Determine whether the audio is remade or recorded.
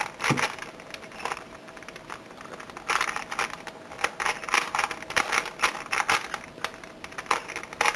recorded